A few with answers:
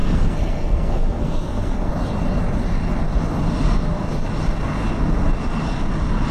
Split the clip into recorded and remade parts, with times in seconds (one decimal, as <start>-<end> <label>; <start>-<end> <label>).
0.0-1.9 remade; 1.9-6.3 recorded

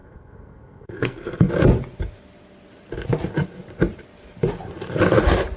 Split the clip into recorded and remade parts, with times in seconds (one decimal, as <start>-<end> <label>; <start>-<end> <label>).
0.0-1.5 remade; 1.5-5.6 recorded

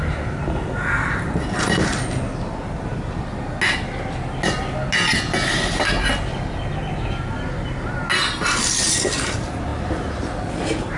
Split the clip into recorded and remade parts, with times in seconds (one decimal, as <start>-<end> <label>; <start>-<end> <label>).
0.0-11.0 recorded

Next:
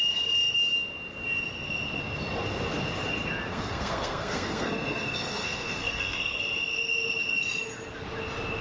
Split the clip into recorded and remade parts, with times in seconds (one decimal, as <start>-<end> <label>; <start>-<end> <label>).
0.0-3.5 recorded; 3.5-6.4 remade; 6.4-8.6 recorded

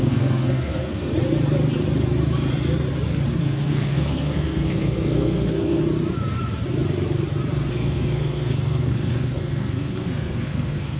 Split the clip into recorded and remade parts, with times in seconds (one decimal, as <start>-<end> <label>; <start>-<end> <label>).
0.0-1.1 remade; 1.1-3.4 recorded; 3.4-5.8 remade; 5.8-7.7 recorded; 7.7-11.0 remade

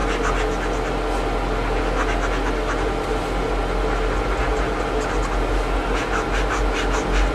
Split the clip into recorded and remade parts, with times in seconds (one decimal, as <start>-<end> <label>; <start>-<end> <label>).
0.0-7.3 recorded